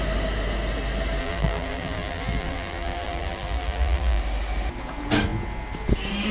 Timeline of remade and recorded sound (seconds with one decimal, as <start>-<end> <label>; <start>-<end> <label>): 0.0-1.2 recorded; 1.2-4.2 remade; 4.2-6.3 recorded